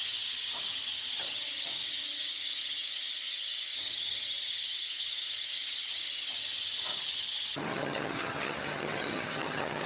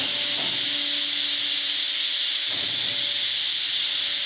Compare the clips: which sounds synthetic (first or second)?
first